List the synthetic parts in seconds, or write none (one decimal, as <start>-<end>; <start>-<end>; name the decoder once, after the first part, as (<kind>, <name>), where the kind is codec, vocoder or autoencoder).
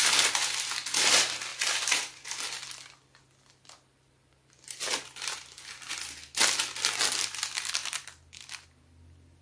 1.5-5.9 (vocoder, BigVGAN v2)